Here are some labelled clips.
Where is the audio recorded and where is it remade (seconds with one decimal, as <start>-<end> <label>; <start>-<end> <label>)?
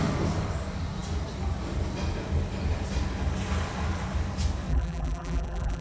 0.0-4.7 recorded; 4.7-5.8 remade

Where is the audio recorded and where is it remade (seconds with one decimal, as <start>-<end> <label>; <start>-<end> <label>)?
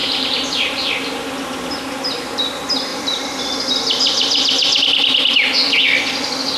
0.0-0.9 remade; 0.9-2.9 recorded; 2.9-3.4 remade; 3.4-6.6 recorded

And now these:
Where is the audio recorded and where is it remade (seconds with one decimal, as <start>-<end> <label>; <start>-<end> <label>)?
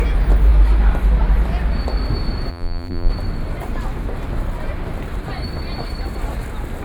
0.0-2.5 recorded; 2.5-3.1 remade; 3.1-6.8 recorded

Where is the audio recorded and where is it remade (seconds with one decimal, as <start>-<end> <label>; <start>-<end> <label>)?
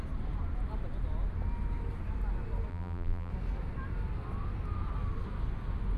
0.0-2.7 recorded; 2.7-3.3 remade; 3.3-6.0 recorded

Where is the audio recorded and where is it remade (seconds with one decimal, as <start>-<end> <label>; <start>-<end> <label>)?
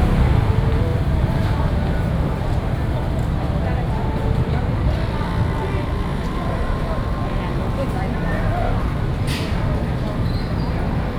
0.0-6.1 recorded; 6.1-7.0 remade; 7.0-11.2 recorded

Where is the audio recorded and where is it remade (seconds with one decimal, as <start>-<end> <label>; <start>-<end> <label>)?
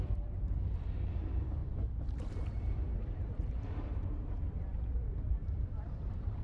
0.0-1.6 remade; 1.6-2.5 recorded; 2.5-6.4 remade